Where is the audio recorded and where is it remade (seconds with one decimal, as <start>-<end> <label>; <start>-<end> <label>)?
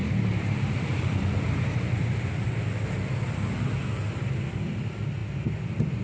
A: 0.0-3.6 remade; 3.6-6.0 recorded